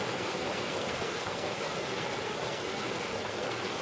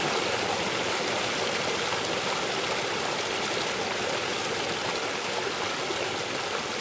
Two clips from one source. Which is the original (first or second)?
second